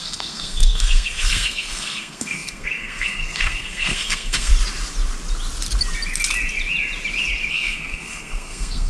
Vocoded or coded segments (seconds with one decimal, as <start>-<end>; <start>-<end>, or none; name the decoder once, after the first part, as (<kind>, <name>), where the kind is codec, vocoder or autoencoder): 0.0-4.5 (codec, SNAC); 7.5-8.9